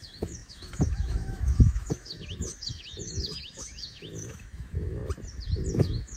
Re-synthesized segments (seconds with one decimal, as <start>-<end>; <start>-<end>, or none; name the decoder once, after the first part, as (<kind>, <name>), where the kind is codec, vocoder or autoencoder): 0.0-5.0 (autoencoder, DAC-VAE); 5.7-6.2